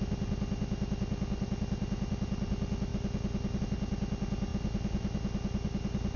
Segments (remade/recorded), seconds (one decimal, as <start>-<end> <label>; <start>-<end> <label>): 0.0-6.2 recorded